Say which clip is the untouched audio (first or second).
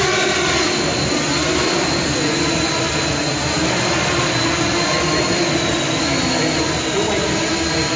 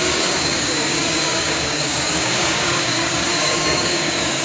first